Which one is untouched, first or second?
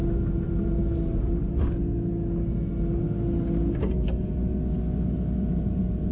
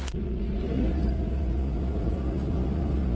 first